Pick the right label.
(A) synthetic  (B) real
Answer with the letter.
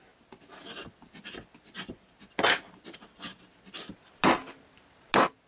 B